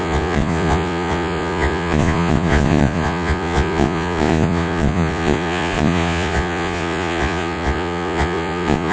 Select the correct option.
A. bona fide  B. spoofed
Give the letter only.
B